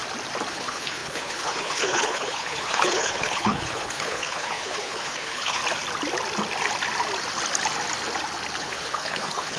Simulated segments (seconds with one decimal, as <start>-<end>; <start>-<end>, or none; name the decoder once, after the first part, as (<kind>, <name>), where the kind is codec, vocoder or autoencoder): 0.5-5.6 (codec, HILCodec); 8.6-9.6